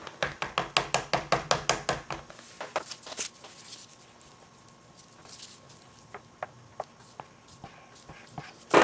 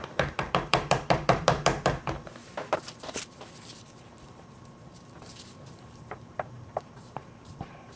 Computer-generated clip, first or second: second